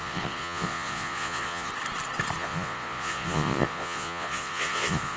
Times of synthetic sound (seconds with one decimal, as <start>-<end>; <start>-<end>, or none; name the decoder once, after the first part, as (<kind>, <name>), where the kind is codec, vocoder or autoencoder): 0.0-1.7 (vocoder, Vocos); 2.4-5.2

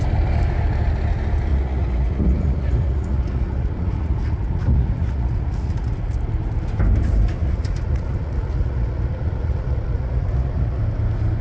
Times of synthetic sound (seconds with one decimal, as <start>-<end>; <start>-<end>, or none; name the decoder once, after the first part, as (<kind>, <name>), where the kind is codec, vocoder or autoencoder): 1.5-6.2 (vocoder, Vocos); 7.4-10.8

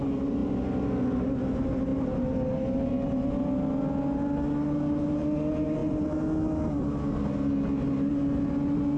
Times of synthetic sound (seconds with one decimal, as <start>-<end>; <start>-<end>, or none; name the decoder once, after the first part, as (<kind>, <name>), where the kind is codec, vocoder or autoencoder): none

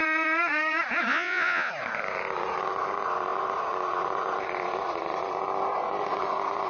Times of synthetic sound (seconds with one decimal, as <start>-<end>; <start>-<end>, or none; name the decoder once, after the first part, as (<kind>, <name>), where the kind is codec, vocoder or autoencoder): 1.1-1.7 (vocoder, Vocos)

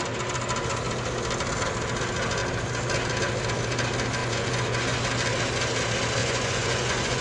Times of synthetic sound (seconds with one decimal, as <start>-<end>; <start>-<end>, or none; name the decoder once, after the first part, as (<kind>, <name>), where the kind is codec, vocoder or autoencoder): 4.2-5.0 (vocoder, Vocos); 6.2-7.2

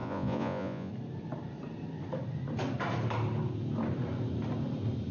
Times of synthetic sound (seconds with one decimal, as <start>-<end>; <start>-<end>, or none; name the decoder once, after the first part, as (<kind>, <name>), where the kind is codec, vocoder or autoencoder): 0.0-0.9 (vocoder, Vocos)

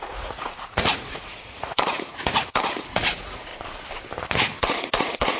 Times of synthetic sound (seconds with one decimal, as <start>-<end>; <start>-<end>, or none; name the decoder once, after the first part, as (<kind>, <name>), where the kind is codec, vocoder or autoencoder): 0.0-3.5 (vocoder, Vocos); 4.6-5.4

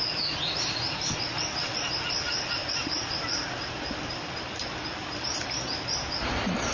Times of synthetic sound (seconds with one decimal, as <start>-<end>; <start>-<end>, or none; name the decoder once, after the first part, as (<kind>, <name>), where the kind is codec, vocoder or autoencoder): none